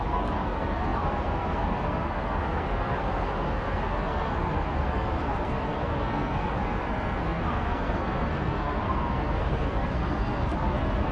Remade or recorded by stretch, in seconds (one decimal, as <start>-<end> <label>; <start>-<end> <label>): 0.0-11.1 remade